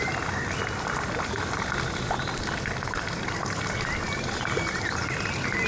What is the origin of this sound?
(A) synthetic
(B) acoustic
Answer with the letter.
B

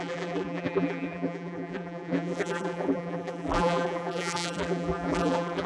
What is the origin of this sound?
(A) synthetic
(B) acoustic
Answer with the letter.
A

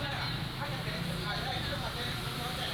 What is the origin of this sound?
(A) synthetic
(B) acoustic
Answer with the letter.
A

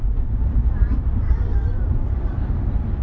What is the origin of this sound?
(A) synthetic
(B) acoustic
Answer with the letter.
A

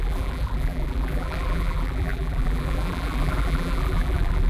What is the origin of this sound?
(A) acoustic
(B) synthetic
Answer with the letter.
B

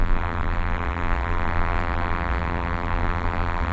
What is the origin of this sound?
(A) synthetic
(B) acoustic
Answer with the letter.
A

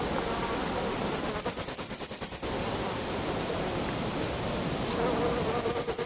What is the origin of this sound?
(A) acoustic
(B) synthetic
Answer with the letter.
A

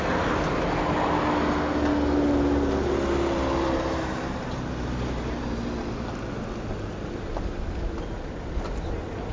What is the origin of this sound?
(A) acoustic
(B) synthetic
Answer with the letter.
A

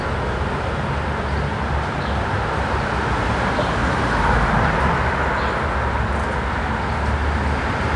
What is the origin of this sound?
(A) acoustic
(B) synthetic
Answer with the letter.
A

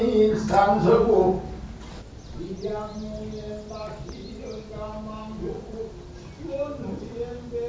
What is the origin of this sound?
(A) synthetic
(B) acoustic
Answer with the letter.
B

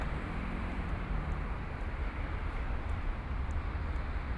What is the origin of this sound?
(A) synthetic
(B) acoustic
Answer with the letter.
A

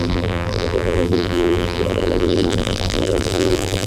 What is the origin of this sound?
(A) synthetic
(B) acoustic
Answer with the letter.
A